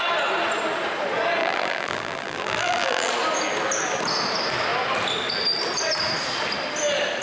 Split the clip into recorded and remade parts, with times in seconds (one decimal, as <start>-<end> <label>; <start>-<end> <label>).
0.0-1.4 recorded; 1.4-3.1 remade; 3.1-7.2 recorded